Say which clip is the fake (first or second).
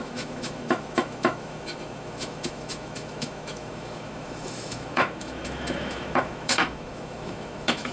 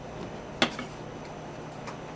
first